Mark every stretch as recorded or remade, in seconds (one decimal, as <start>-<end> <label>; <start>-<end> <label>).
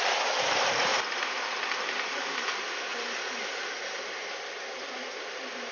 0.0-5.7 recorded